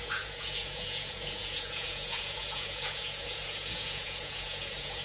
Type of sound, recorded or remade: remade